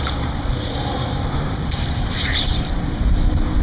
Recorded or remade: remade